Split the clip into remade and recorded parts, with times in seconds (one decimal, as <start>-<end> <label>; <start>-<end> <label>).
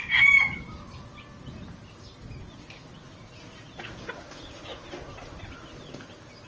0.0-6.5 recorded